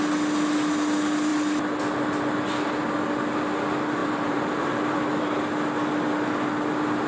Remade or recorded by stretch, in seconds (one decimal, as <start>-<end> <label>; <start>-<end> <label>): 0.0-4.0 recorded; 4.0-5.2 remade; 5.2-7.1 recorded